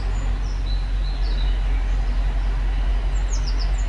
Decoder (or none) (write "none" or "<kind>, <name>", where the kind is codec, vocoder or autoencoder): none